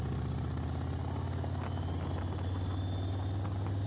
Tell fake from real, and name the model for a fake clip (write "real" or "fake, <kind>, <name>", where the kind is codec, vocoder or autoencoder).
real